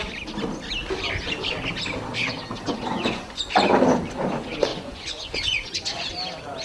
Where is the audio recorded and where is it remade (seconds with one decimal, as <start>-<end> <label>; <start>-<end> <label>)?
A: 0.0-2.6 recorded; 2.6-3.4 remade; 3.4-4.7 recorded; 4.7-6.1 remade; 6.1-6.6 recorded